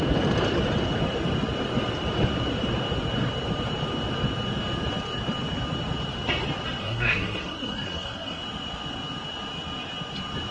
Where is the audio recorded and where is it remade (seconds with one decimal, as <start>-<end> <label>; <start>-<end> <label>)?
0.0-6.8 recorded; 6.8-8.4 remade; 8.4-10.5 recorded